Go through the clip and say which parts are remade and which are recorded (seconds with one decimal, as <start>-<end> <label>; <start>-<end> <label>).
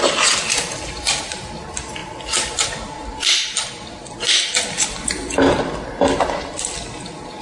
0.0-7.4 recorded